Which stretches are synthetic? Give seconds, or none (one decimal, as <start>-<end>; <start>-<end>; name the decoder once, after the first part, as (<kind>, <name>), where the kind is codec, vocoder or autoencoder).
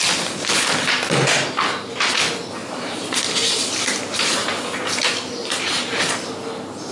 2.6-3.2 (vocoder, BigVGAN v2); 3.9-4.5; 5.4-6.1